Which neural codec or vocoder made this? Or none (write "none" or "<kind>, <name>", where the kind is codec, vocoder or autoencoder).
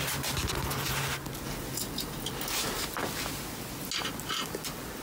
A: none